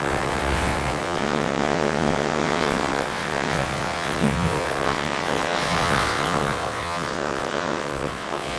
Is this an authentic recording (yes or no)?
no